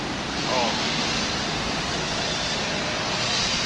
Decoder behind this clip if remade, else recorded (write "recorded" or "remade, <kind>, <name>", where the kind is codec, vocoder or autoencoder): recorded